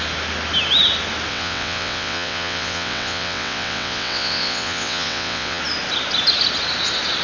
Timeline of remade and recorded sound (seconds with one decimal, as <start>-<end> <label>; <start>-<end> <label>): 0.0-1.3 recorded; 1.3-5.6 remade; 5.6-7.2 recorded